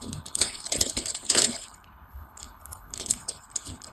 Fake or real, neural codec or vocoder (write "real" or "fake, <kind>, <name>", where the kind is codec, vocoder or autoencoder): fake, codec, HILCodec